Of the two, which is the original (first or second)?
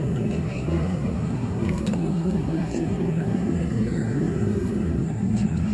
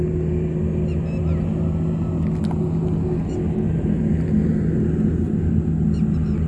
second